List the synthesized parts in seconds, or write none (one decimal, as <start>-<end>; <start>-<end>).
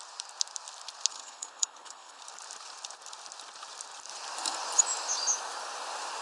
1.1-2.2